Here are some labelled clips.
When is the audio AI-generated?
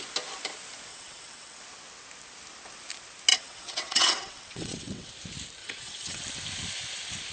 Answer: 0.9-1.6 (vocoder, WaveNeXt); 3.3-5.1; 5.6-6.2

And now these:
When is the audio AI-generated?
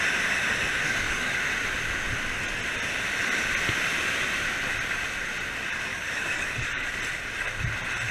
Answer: 0.8-1.4 (codec, DAC); 5.9-7.0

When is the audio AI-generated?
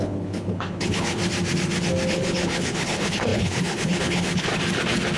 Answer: 0.0-1.2 (codec, HILCodec); 2.1-4.5